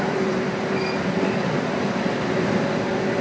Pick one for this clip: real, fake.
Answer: fake